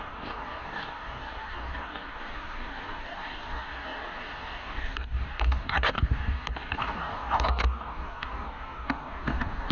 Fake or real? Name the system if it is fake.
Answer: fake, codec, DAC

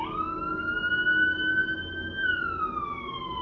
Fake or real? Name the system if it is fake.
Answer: real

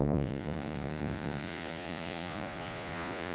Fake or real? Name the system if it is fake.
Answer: fake, vocoder, Vocos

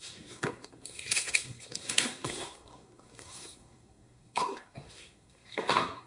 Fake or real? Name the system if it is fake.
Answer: fake, codec, SNAC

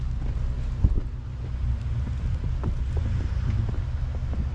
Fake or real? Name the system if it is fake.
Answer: real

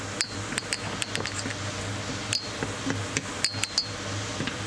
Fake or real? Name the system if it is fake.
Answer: real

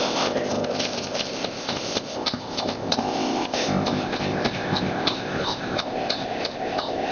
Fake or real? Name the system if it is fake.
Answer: fake, codec, ZipCodec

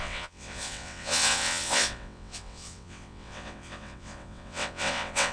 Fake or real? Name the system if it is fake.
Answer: fake, vocoder, WaveNeXt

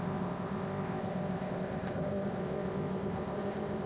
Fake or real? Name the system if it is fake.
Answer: fake, codec, ZipCodec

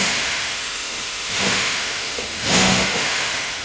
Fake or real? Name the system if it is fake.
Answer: fake, autoencoder, DAC-VAE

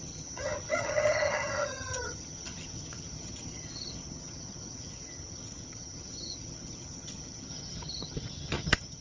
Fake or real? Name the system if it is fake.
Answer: fake, vocoder, HiFi-GAN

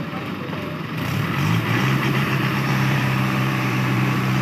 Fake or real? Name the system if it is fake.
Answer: fake, vocoder, BigVGAN v2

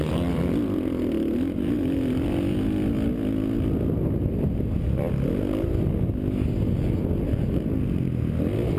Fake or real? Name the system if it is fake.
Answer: real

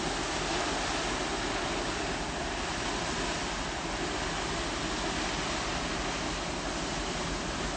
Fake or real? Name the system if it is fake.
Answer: real